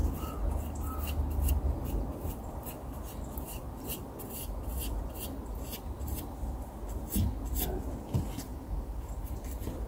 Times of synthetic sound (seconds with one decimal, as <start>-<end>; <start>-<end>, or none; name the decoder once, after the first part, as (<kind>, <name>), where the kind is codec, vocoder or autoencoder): 2.1-6.7 (vocoder, BigVGAN v2); 8.5-9.9